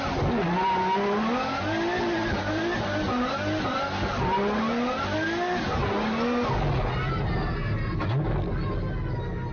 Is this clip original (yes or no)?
yes